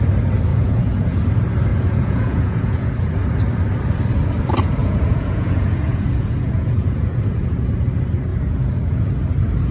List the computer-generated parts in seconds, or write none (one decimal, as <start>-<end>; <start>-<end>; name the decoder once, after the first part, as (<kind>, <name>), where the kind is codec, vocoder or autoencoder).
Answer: 0.5-1.2 (vocoder, Vocos); 1.7-2.9; 4.8-7.7; 8.3-9.1